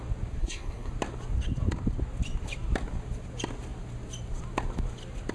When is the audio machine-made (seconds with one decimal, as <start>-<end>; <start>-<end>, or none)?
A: 0.4-0.9